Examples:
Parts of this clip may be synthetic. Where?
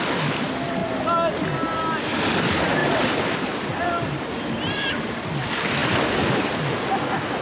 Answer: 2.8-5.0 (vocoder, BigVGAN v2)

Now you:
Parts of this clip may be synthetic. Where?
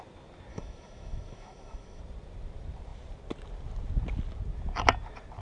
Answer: 0.5-2.0 (autoencoder, DAC-VAE)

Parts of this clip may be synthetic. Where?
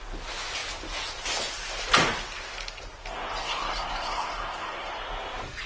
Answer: 3.4-4.9 (codec, SNAC)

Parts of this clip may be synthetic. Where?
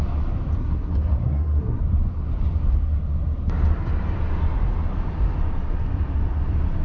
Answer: 0.6-1.8 (codec, SNAC)